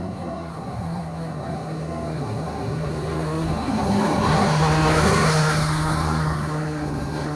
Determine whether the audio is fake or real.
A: fake